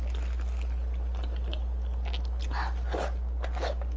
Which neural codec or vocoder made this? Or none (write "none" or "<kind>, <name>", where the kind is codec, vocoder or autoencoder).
none